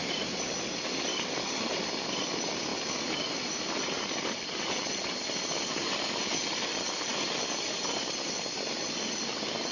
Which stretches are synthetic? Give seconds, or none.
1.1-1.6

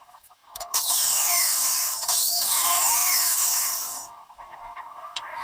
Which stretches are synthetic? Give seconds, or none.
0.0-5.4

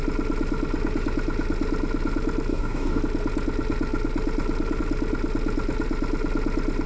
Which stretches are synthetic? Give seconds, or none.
2.5-3.0

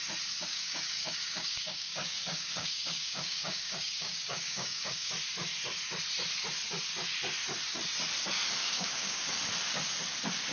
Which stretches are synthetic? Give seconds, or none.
0.5-5.1; 8.6-9.3